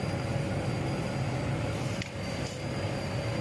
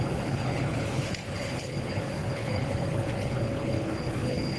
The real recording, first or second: first